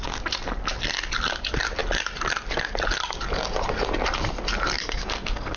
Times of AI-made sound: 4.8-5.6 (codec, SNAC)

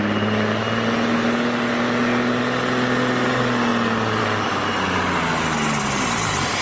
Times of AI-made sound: none

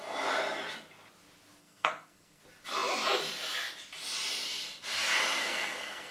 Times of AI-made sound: 1.6-2.4 (codec, SNAC); 5.4-6.1